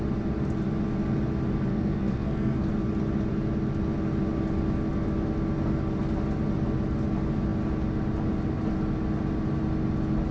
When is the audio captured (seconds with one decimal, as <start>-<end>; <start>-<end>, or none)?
0.0-1.7; 2.7-10.3

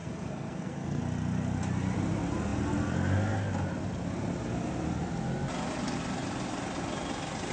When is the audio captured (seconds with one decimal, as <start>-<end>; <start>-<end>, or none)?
1.0-7.5

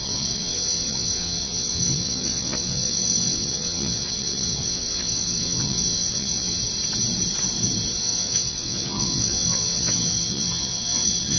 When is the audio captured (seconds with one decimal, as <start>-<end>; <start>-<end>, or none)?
6.6-8.0

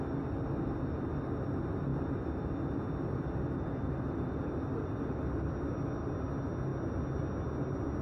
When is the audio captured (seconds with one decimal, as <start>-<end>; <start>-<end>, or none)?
0.0-8.0

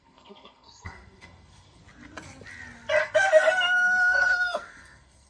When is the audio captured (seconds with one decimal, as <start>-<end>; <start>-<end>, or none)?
1.8-3.0